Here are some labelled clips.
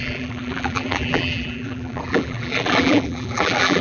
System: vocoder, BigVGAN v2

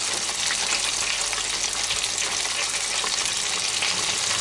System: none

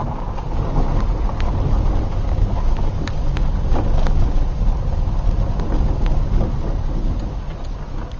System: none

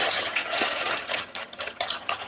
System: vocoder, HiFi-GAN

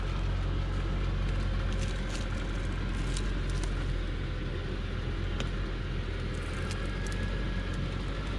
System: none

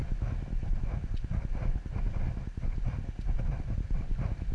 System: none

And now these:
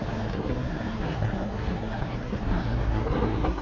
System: codec, SNAC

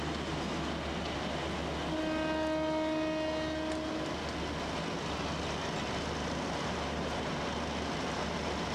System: none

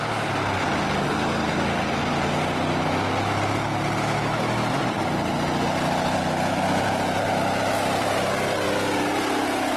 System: none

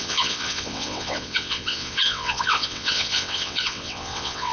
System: vocoder, WaveNeXt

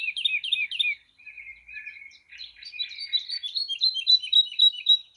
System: vocoder, BigVGAN v2